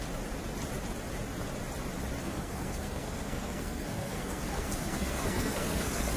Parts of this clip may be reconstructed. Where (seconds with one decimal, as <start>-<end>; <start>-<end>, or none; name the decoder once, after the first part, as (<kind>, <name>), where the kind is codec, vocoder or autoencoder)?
2.2-6.2 (codec, SNAC)